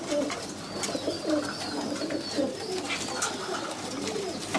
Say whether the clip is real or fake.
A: real